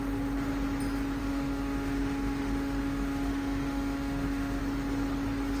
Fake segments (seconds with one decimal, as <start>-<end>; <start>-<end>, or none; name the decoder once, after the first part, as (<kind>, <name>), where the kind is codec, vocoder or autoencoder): 1.2-4.6 (autoencoder, DAC-VAE)